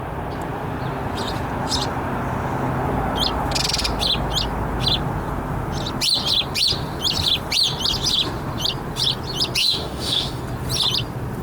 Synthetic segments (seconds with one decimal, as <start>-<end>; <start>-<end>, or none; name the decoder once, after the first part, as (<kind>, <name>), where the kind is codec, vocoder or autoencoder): 9.6-10.4 (autoencoder, DAC-VAE)